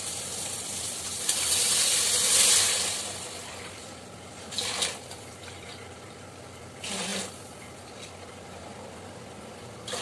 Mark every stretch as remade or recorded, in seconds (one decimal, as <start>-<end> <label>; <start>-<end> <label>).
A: 0.0-10.0 remade